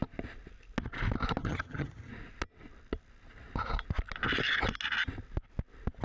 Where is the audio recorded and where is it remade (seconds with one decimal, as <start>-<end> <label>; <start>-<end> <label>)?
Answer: 0.0-1.4 recorded; 1.4-2.1 remade; 2.1-6.0 recorded